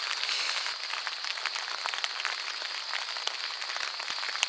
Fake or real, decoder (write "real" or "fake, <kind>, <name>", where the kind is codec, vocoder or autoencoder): real